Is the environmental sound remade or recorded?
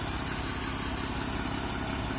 recorded